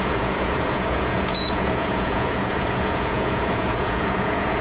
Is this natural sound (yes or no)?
no